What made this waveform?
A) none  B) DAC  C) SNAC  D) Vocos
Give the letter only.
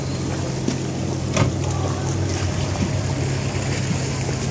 A